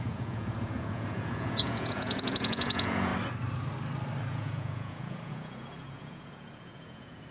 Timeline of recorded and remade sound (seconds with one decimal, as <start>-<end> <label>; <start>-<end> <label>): 0.0-3.1 remade; 3.1-4.3 recorded; 4.3-7.3 remade